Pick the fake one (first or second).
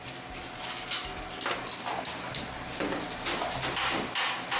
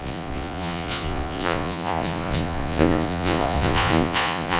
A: second